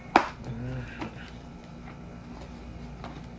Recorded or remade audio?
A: recorded